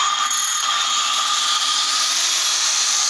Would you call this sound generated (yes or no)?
no